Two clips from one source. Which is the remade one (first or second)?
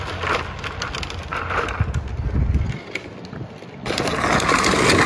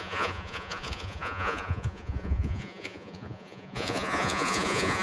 second